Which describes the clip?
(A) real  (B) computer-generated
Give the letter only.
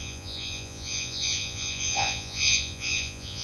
B